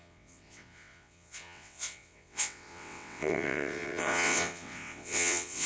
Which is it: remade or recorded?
remade